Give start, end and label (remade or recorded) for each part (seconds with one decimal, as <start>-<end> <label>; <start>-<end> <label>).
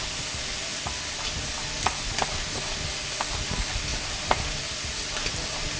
0.0-3.9 recorded; 3.9-4.6 remade; 4.6-5.8 recorded